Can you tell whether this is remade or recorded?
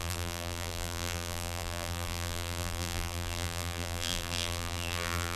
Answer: remade